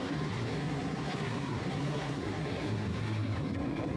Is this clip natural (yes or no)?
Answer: no